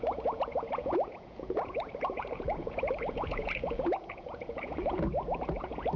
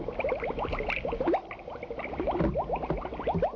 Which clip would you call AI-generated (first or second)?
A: first